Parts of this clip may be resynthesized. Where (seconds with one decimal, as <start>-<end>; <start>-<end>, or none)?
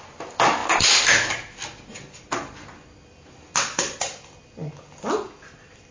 none